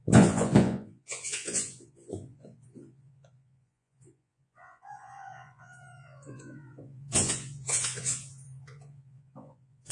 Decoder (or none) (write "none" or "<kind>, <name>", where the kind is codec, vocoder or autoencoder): vocoder, Vocos